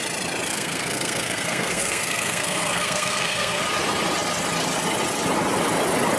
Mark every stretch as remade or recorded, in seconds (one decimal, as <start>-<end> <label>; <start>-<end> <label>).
0.0-0.5 recorded; 0.5-3.6 remade; 3.6-6.2 recorded